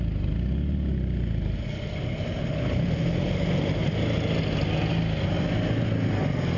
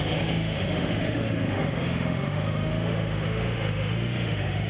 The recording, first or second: first